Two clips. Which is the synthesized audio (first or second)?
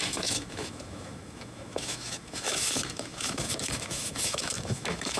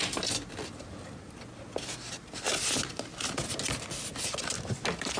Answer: first